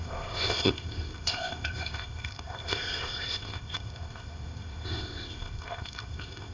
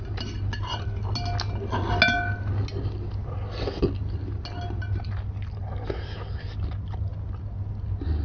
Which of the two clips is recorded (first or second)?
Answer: second